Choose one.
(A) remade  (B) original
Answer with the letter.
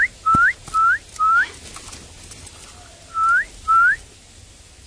B